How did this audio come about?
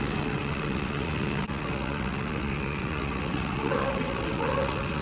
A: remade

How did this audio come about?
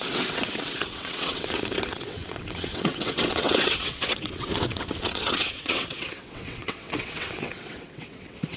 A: remade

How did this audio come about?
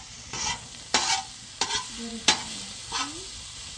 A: recorded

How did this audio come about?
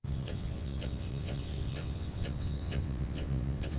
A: remade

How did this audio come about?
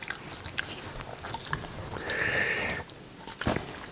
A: recorded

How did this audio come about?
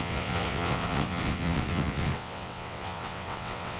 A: remade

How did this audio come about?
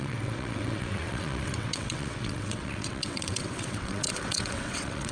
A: remade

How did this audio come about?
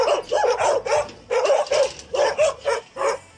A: recorded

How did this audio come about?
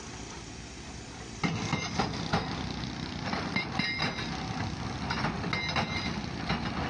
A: recorded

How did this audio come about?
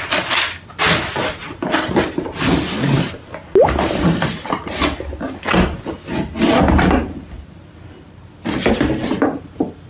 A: recorded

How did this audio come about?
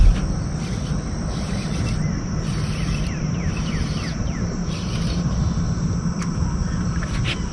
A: recorded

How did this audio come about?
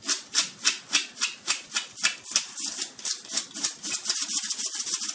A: recorded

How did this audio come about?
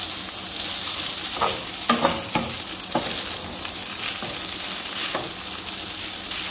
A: recorded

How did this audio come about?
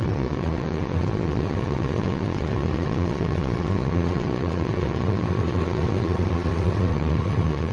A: remade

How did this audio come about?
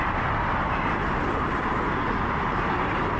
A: recorded